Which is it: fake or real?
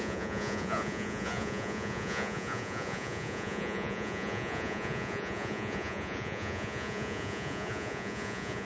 fake